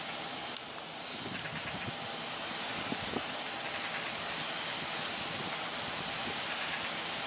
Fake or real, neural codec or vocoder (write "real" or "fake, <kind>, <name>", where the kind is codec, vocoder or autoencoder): real